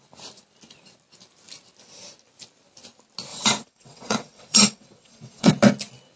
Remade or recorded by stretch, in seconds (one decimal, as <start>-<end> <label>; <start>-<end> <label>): 0.0-3.3 recorded; 3.3-5.5 remade; 5.5-6.2 recorded